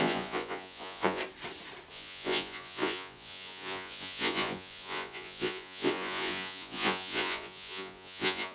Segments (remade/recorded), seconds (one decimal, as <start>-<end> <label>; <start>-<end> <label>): 0.0-1.2 remade; 1.2-1.9 recorded; 1.9-8.5 remade